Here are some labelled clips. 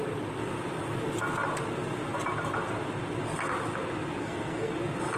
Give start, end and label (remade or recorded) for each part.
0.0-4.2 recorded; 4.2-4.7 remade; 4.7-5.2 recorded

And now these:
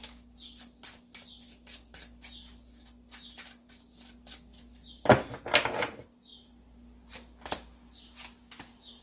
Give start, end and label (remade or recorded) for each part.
0.0-9.0 recorded

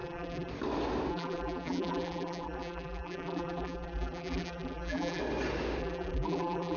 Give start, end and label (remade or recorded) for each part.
0.0-0.5 remade; 0.5-1.1 recorded; 1.1-5.2 remade; 5.2-5.8 recorded; 5.8-6.8 remade

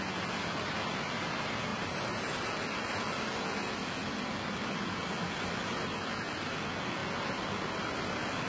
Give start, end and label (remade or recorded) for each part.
0.0-1.7 recorded; 1.7-2.5 remade; 2.5-8.5 recorded